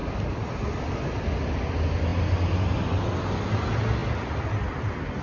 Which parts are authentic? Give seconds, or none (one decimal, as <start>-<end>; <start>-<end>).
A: 0.0-5.2

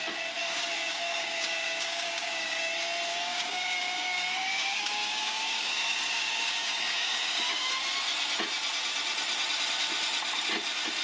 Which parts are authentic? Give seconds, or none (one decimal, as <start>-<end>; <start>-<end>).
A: 0.0-0.4; 2.7-3.1; 7.7-11.0

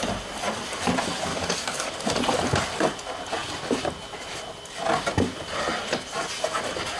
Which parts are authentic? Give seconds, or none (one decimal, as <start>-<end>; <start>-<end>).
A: 0.0-1.3; 1.9-7.0

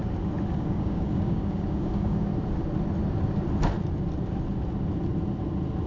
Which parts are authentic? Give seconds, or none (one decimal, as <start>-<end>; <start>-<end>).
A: 0.0-0.5; 2.3-5.9